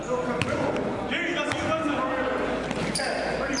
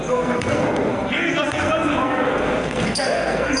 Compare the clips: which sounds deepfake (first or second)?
second